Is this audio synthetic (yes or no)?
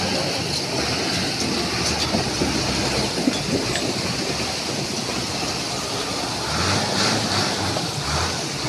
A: no